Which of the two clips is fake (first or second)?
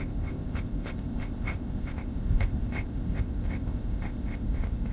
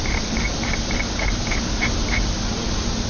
first